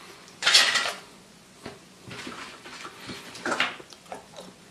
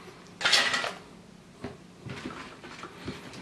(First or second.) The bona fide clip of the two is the second